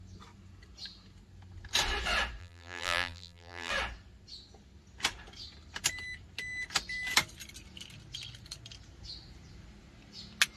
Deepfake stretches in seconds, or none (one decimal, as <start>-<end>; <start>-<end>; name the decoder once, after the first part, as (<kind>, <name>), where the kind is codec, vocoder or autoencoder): 2.4-3.7 (vocoder, BigVGAN v2)